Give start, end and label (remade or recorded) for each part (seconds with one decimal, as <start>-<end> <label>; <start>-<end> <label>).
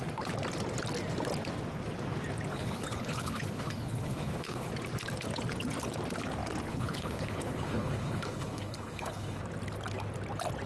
0.0-2.5 recorded; 2.5-4.7 remade; 4.7-6.7 recorded; 6.7-9.4 remade; 9.4-10.7 recorded